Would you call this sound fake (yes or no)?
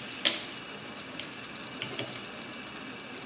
no